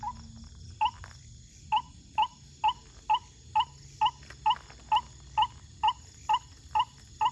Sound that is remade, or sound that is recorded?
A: recorded